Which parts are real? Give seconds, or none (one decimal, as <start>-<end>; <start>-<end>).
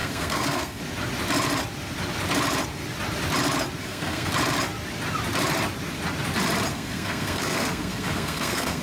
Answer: 0.8-3.8; 4.3-6.7